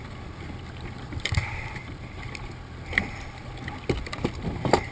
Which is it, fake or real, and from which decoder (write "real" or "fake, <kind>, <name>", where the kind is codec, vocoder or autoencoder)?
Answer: real